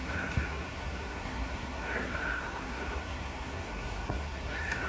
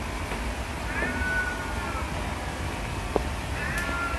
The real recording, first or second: second